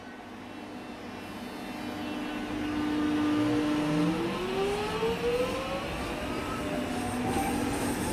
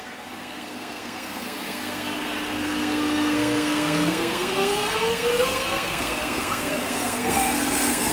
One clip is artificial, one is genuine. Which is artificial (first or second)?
second